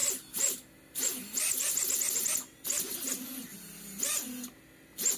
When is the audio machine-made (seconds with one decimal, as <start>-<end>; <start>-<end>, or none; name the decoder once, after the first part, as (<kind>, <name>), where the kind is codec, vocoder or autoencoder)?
3.5-4.4 (vocoder, BigVGAN v2)